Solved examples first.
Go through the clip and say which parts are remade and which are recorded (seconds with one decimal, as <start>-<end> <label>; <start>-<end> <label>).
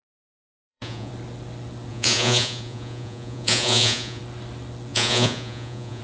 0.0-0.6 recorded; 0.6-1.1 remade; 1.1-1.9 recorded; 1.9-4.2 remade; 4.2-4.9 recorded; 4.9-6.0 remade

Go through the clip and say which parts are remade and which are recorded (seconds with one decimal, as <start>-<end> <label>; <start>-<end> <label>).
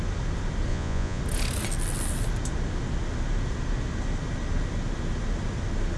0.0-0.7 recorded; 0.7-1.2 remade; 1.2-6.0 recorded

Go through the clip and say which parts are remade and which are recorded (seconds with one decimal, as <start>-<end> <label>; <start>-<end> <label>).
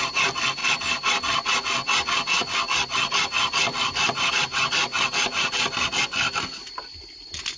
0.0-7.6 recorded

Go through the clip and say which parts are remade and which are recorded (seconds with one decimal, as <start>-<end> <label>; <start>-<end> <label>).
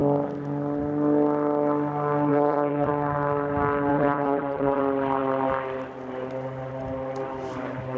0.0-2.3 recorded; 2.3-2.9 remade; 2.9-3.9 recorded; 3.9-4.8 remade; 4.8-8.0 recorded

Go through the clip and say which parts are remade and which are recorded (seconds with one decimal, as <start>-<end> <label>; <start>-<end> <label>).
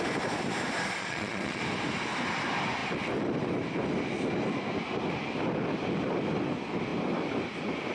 0.0-1.0 recorded; 1.0-1.6 remade; 1.6-7.9 recorded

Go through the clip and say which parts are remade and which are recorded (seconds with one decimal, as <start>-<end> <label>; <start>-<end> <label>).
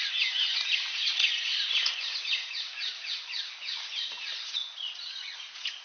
0.0-0.5 recorded; 0.5-3.2 remade; 3.2-3.7 recorded; 3.7-5.8 remade